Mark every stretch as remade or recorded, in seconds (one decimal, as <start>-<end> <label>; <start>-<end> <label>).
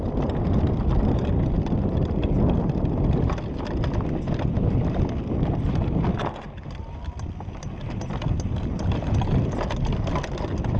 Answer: 0.0-10.8 recorded